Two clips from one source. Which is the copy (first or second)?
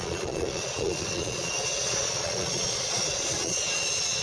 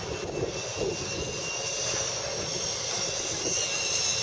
first